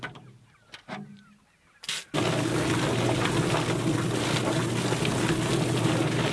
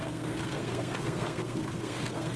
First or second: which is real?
first